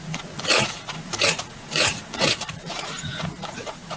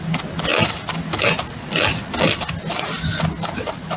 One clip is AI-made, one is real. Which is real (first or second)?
second